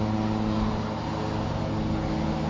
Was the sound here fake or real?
real